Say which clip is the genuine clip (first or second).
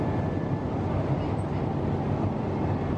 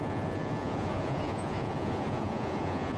first